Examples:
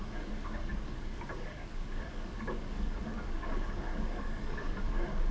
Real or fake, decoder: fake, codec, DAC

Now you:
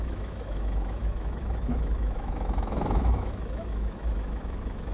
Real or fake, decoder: fake, autoencoder, DAC-VAE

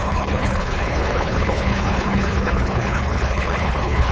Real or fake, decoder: fake, codec, HILCodec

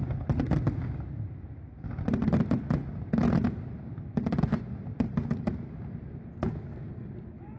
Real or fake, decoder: real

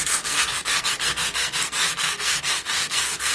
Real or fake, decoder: fake, codec, SNAC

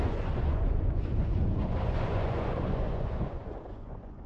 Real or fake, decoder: fake, vocoder, Vocos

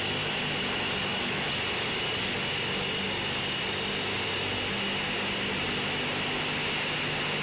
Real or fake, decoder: real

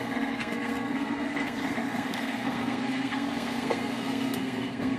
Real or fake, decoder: fake, codec, SNAC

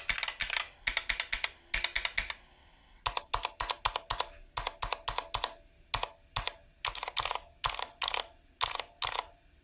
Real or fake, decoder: real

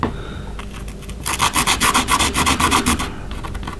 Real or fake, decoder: real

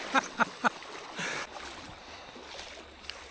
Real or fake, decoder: real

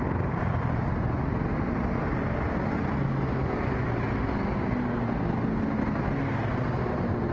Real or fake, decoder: real